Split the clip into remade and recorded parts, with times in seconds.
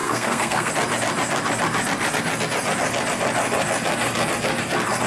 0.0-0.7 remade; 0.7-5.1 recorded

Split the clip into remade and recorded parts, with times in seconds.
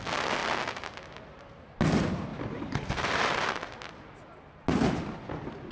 0.0-2.3 recorded; 2.3-3.7 remade; 3.7-5.7 recorded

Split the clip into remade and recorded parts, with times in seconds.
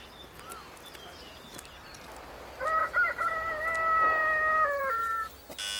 0.0-2.8 recorded; 2.8-3.3 remade; 3.3-5.8 recorded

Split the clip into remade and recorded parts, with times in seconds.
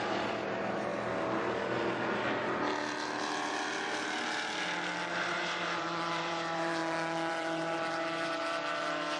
0.0-0.9 remade; 0.9-5.1 recorded; 5.1-6.8 remade; 6.8-7.3 recorded; 7.3-9.2 remade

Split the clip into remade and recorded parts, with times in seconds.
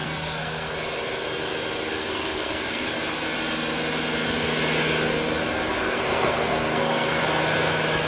0.0-0.7 remade; 0.7-2.0 recorded; 2.0-2.9 remade; 2.9-5.8 recorded; 5.8-7.2 remade; 7.2-8.1 recorded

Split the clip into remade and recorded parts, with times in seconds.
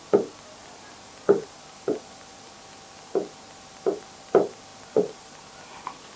0.0-6.2 recorded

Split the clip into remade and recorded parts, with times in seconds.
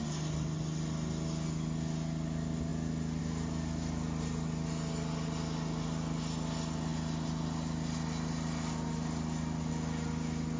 0.0-10.6 recorded